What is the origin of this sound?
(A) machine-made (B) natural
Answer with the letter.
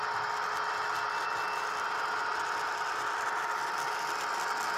B